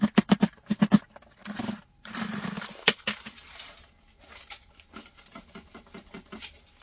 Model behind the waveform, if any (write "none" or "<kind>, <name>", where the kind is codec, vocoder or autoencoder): vocoder, BigVGAN v2